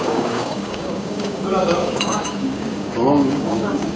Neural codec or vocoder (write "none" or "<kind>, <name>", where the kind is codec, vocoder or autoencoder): codec, DAC